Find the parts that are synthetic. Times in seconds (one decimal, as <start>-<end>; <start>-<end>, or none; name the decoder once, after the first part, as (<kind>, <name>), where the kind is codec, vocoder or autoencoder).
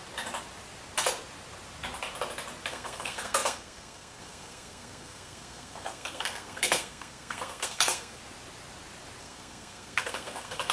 2.7-8.2 (codec, SNAC); 9.2-10.7